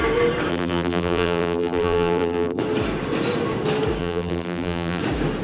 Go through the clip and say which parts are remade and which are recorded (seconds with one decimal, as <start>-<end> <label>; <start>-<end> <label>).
0.0-0.5 recorded; 0.5-2.6 remade; 2.6-4.0 recorded; 4.0-5.0 remade; 5.0-5.4 recorded